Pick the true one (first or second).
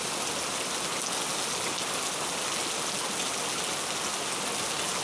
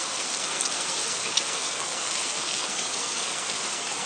first